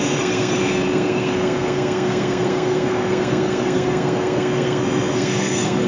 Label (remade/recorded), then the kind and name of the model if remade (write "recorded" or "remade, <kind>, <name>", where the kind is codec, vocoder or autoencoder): remade, codec, SNAC